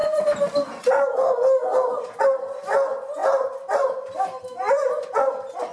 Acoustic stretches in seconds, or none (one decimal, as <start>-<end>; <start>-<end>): 0.0-5.7